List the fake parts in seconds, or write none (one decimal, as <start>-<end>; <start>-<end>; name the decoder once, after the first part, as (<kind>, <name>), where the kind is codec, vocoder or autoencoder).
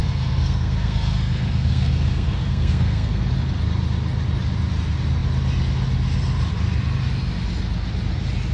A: 0.0-3.3 (codec, SNAC)